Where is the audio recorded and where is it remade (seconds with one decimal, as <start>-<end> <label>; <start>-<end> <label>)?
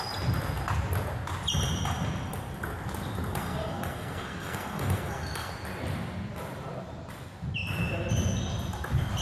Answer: 0.0-3.4 recorded; 3.4-5.5 remade; 5.5-9.2 recorded